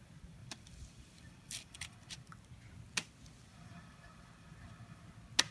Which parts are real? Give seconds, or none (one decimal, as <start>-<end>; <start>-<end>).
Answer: 0.0-0.4; 2.1-3.5; 5.0-5.5